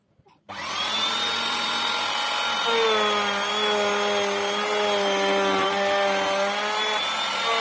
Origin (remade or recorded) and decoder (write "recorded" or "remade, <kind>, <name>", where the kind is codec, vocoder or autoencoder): recorded